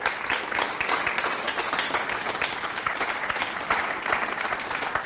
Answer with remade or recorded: recorded